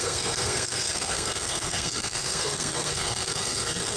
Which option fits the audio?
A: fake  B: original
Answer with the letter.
A